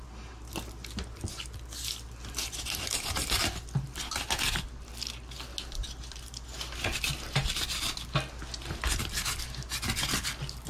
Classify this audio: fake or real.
real